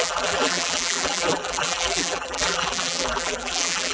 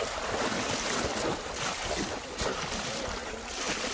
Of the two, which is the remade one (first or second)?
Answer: first